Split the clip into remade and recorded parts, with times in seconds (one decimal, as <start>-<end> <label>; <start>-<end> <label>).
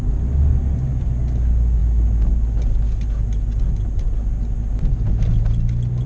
0.0-6.1 recorded